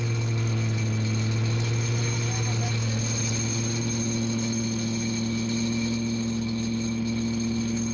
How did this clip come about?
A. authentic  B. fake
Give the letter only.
A